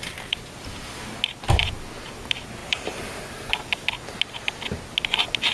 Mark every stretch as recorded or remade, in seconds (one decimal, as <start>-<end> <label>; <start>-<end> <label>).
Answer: 0.0-2.6 recorded; 2.6-3.2 remade; 3.2-5.5 recorded